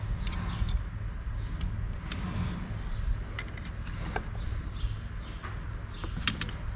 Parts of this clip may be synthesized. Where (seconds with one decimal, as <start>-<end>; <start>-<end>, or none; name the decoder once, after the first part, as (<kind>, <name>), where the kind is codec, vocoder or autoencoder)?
none